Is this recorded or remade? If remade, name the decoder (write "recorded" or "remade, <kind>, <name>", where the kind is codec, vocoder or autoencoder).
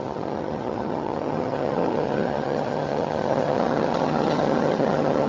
remade, vocoder, HiFi-GAN